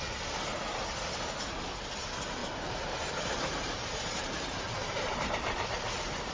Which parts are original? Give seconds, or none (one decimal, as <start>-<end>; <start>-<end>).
0.0-0.5; 1.7-2.4